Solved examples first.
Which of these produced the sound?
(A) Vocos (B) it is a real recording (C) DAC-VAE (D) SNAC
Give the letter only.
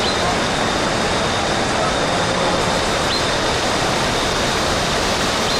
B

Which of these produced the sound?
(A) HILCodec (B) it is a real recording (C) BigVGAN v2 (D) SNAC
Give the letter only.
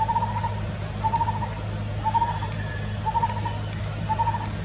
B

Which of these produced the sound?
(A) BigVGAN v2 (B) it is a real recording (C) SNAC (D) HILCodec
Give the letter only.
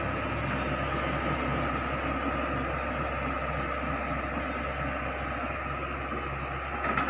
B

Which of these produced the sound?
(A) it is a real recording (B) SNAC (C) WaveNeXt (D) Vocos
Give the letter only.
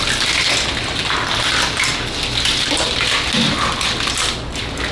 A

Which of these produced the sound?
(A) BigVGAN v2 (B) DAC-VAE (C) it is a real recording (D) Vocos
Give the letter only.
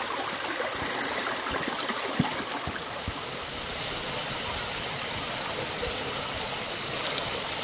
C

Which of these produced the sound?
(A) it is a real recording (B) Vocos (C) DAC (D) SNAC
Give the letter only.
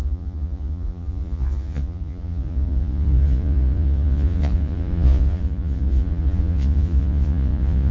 B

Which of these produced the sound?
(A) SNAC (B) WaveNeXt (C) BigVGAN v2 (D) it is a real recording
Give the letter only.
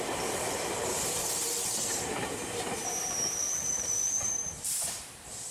C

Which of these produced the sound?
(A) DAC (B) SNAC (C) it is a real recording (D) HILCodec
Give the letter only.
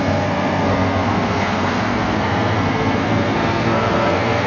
B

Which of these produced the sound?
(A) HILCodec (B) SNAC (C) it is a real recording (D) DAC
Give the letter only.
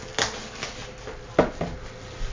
C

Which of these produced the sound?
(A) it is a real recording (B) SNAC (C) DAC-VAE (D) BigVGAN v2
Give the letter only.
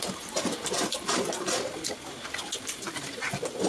A